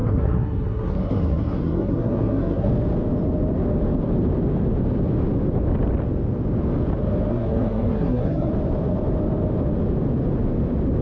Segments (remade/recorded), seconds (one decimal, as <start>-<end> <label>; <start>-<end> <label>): 0.0-2.7 remade; 2.7-7.3 recorded; 7.3-8.5 remade; 8.5-11.0 recorded